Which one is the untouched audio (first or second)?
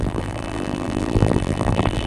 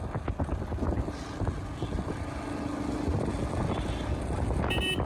second